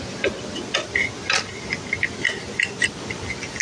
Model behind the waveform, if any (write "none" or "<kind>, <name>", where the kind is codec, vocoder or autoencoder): none